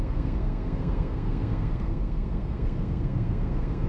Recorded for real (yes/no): no